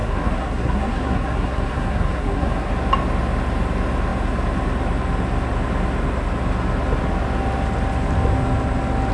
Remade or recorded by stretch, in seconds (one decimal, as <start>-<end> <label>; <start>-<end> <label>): 0.0-2.7 remade; 2.7-9.1 recorded